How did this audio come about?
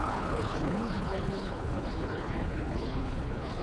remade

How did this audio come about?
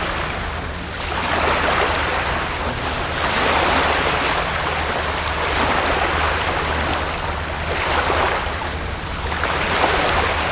recorded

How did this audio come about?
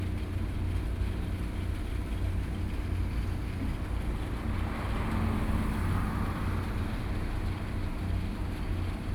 recorded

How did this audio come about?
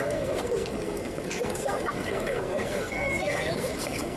remade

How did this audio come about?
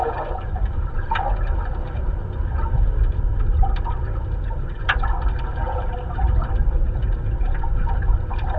remade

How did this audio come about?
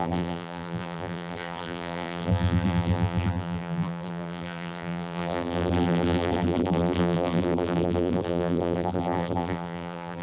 remade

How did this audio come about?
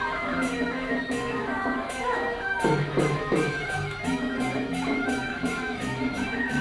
remade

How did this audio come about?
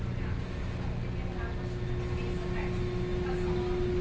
recorded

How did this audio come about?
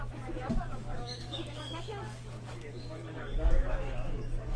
remade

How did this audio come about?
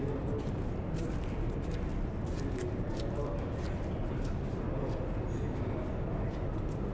recorded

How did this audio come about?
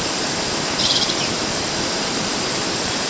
remade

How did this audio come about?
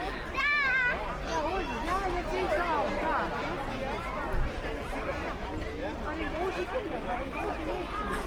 recorded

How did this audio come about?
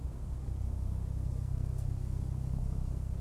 remade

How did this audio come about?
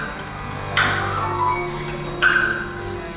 recorded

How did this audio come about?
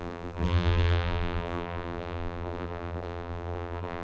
remade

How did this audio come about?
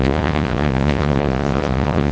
remade